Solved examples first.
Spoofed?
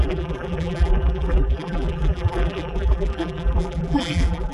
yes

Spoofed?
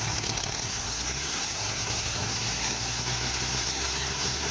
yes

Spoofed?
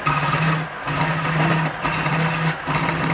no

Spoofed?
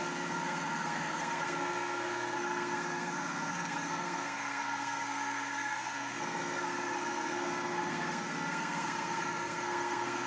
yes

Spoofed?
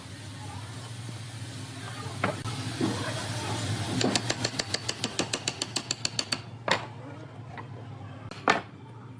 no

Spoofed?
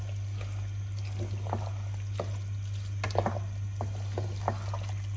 no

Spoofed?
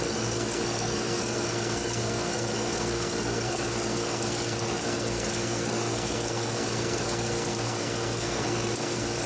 yes